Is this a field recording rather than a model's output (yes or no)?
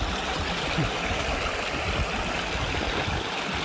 yes